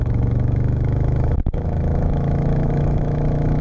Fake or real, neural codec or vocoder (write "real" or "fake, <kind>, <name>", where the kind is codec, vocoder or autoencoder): fake, autoencoder, DAC-VAE